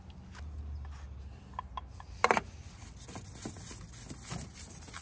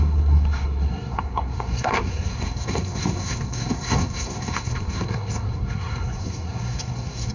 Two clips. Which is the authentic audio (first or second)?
first